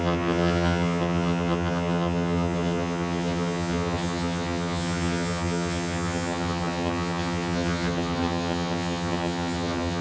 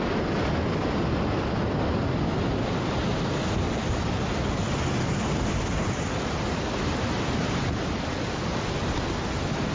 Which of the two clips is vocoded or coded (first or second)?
first